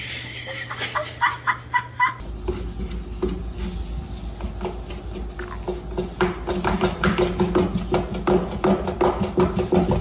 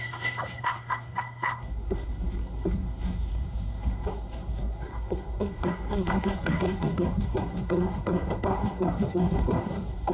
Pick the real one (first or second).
first